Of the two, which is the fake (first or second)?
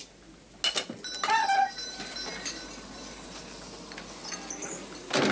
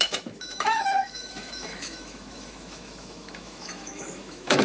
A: second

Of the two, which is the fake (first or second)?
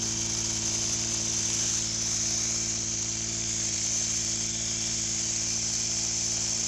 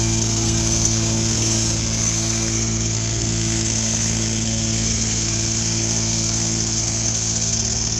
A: second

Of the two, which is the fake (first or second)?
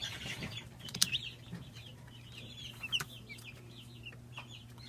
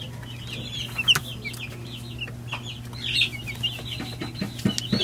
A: first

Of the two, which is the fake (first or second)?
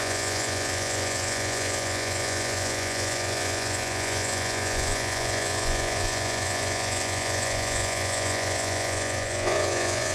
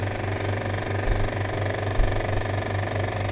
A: first